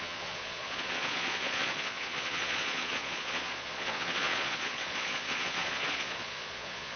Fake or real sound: fake